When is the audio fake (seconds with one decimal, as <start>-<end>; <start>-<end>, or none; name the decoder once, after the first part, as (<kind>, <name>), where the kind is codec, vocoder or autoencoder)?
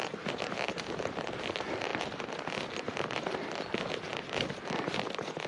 none